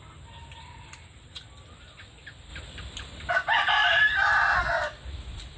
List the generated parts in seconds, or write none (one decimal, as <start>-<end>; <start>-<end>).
none

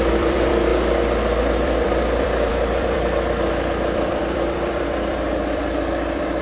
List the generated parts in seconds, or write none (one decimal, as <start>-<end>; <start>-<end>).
0.0-0.7; 1.4-6.4

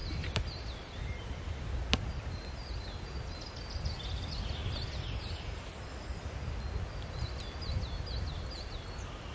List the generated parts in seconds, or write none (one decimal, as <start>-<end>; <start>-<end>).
none

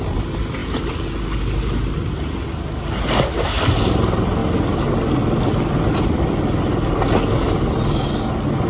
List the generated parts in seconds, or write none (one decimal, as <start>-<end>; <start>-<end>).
none